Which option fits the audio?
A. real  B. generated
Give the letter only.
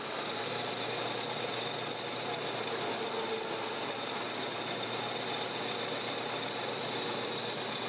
A